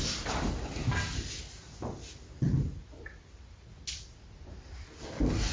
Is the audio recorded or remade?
recorded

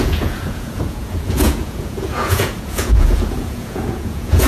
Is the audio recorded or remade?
remade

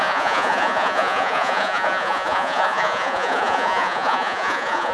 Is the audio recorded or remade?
remade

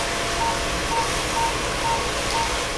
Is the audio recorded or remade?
recorded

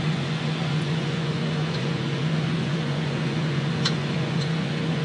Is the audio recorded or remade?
remade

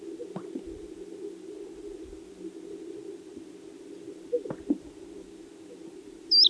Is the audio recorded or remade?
recorded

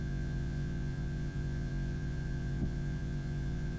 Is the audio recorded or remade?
remade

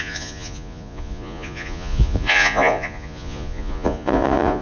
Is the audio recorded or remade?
remade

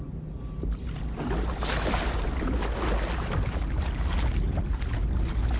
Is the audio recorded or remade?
recorded